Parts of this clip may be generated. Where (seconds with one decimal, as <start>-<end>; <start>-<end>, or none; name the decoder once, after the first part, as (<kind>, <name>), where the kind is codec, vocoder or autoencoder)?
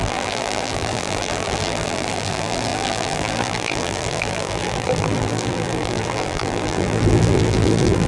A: 0.0-8.1 (vocoder, BigVGAN v2)